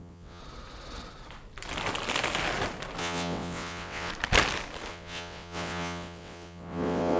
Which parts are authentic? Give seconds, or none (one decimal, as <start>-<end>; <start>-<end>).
0.4-3.0; 4.1-4.9

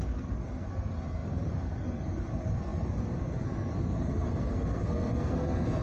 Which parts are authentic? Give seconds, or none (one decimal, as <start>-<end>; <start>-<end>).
none